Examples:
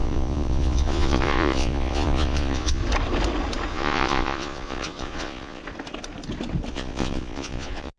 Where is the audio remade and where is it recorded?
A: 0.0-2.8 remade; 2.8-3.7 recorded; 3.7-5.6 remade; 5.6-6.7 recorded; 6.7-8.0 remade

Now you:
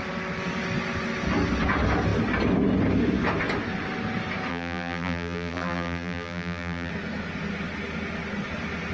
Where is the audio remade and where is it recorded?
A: 0.0-4.5 recorded; 4.5-6.9 remade; 6.9-8.9 recorded

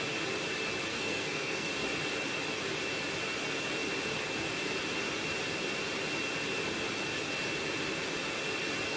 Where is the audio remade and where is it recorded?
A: 0.0-0.9 recorded; 0.9-1.7 remade; 1.7-9.0 recorded

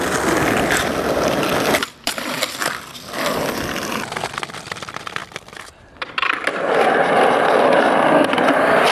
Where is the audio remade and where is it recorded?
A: 0.0-8.9 remade

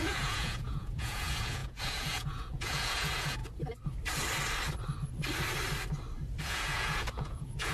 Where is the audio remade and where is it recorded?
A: 0.0-3.4 remade; 3.4-6.4 recorded; 6.4-7.7 remade

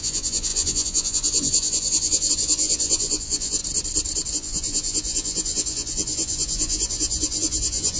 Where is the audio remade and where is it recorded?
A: 0.0-3.6 remade; 3.6-4.3 recorded; 4.3-8.0 remade

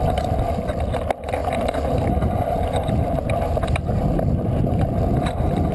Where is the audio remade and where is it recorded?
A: 0.0-1.4 recorded; 1.4-4.5 remade; 4.5-5.7 recorded

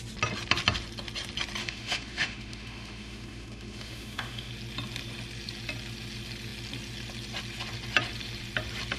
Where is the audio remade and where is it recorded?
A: 0.0-1.6 recorded; 1.6-4.5 remade; 4.5-9.0 recorded